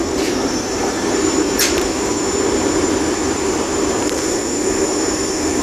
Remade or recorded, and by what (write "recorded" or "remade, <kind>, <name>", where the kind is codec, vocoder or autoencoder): remade, vocoder, BigVGAN v2